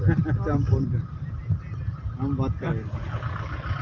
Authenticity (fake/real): real